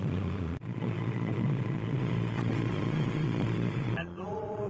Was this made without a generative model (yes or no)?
no